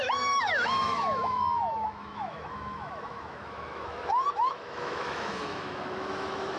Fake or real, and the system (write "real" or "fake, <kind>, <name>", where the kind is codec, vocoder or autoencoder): fake, autoencoder, DAC-VAE